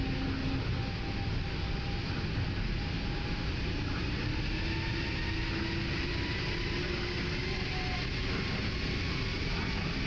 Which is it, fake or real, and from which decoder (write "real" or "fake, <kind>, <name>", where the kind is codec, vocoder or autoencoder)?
real